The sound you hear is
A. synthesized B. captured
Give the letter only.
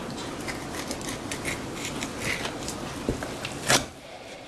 B